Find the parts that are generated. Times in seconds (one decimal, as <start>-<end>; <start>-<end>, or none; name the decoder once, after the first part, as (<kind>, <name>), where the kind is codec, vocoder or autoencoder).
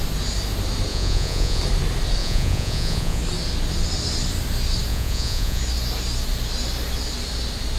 0.9-1.6 (vocoder, Vocos); 2.2-3.2; 4.9-5.6